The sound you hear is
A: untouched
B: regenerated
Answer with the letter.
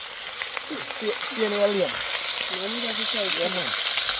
A